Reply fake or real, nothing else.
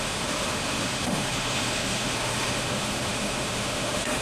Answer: fake